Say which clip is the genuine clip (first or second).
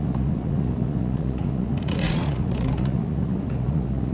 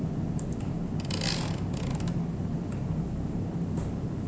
second